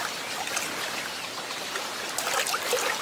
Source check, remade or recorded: recorded